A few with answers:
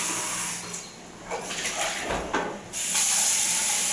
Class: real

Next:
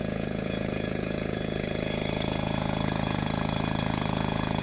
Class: fake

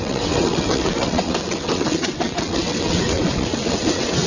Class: fake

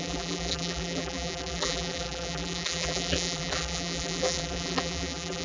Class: fake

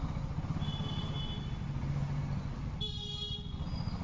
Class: real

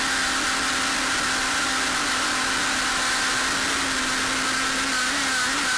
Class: real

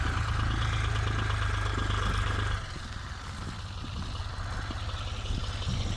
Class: real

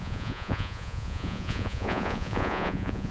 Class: fake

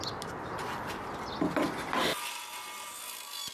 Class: real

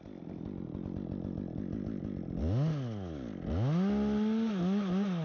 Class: real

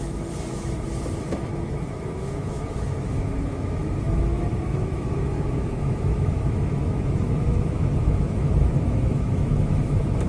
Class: fake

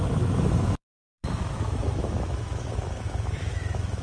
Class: fake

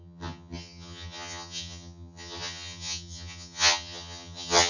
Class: fake